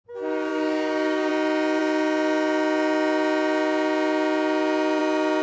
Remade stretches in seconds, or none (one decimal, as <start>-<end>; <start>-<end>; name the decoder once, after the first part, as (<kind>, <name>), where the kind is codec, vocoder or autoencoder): 0.5-1.3 (codec, DAC)

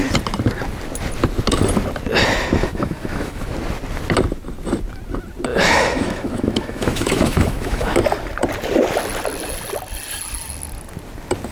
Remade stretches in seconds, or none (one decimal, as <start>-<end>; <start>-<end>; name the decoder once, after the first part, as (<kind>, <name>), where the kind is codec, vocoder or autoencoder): 2.6-3.5 (autoencoder, DAC-VAE); 5.5-8.0

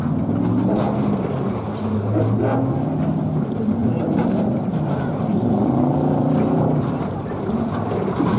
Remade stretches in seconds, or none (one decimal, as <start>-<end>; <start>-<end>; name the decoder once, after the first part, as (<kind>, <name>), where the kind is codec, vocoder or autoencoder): 3.8-5.8 (vocoder, BigVGAN v2); 6.2-8.4

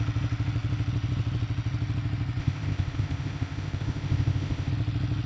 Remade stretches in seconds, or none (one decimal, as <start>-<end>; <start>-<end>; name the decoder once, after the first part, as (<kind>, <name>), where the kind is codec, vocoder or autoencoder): 2.4-4.7 (codec, ZipCodec)

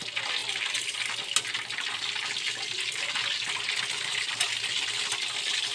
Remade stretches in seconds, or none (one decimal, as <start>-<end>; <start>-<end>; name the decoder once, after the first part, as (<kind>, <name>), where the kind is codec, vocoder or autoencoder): none

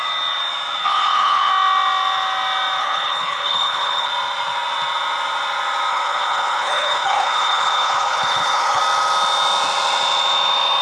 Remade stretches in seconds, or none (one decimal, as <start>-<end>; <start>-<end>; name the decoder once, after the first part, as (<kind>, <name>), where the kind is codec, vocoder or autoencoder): 0.8-1.5 (codec, HILCodec); 2.8-4.1; 5.9-8.8